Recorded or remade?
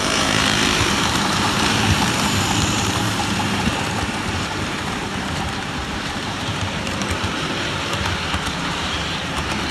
remade